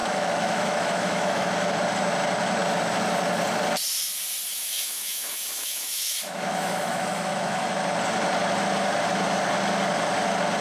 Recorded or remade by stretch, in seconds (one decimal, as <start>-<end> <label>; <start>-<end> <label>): 0.0-1.5 remade; 1.5-4.5 recorded; 4.5-7.7 remade; 7.7-10.6 recorded